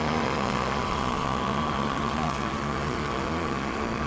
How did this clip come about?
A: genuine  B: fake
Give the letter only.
B